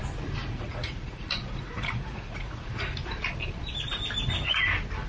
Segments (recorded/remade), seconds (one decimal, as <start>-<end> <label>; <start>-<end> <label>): 0.0-0.4 recorded; 0.4-2.9 remade; 2.9-5.1 recorded